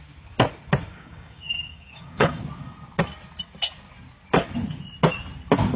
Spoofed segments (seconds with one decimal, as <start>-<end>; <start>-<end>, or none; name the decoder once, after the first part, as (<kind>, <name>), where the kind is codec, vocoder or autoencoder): 0.9-2.4 (codec, DAC)